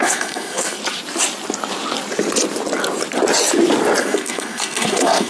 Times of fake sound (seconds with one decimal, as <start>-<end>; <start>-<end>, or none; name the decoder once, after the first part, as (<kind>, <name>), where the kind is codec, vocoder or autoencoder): 0.0-0.8 (codec, SNAC); 4.0-5.3

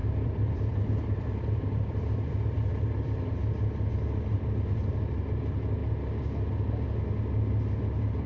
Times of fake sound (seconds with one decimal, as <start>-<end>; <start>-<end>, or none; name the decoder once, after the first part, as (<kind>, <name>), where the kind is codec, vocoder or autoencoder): 0.0-3.3 (vocoder, BigVGAN v2)

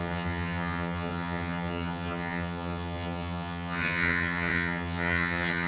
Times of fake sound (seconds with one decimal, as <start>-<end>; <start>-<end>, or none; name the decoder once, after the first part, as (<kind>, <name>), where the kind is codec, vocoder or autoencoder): 0.0-5.7 (vocoder, HiFi-GAN)